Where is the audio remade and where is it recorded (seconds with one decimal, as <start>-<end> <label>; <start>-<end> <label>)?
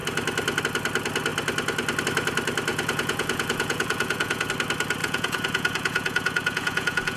0.0-2.7 recorded; 2.7-4.5 remade; 4.5-5.0 recorded; 5.0-7.2 remade